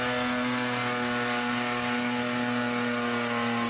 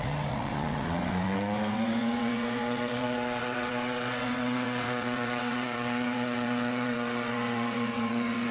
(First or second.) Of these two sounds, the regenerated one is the second